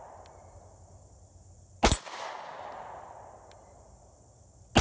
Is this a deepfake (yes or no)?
no